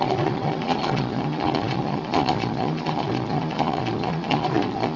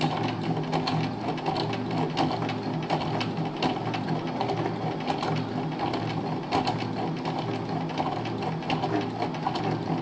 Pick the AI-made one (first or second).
first